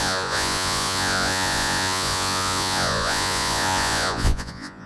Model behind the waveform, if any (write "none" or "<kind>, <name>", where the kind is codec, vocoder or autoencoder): vocoder, Vocos